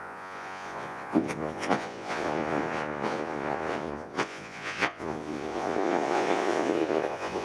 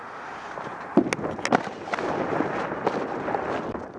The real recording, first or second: second